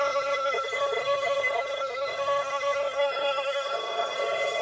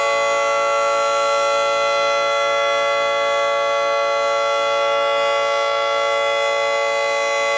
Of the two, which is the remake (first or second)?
first